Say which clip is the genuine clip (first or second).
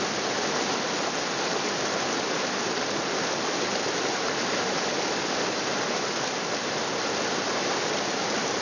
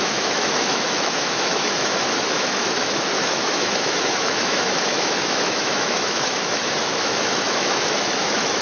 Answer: first